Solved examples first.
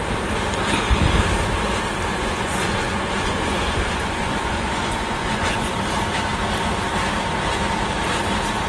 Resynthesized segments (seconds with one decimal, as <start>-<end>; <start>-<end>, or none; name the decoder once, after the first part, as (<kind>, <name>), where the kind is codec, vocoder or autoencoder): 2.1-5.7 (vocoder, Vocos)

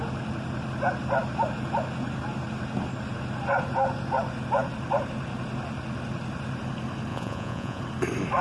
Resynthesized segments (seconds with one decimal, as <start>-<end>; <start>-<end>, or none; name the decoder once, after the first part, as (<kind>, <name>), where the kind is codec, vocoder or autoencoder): 7.1-7.8 (vocoder, Vocos)

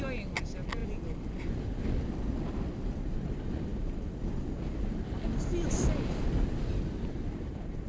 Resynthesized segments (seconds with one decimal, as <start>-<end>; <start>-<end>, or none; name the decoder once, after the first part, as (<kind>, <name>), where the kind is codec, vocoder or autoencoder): none

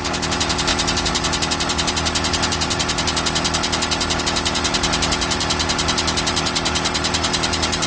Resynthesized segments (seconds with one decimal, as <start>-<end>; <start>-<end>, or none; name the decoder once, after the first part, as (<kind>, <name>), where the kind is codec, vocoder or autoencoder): none

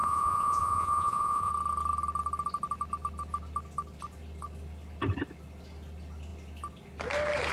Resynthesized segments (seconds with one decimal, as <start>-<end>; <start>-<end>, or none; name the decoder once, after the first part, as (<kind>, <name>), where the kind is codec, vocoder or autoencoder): 0.0-1.5 (vocoder, Vocos)